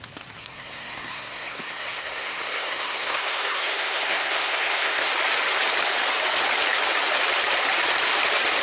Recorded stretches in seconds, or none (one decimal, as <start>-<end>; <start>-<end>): 0.0-0.4; 5.1-8.6